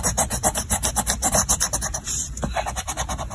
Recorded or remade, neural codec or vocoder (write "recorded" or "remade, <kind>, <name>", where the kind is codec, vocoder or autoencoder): remade, vocoder, BigVGAN v2